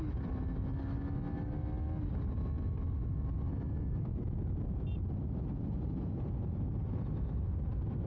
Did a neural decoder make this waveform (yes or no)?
no